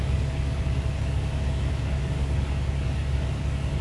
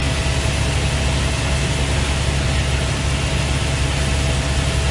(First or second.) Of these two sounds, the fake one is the first